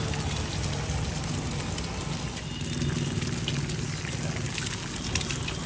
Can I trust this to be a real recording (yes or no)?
yes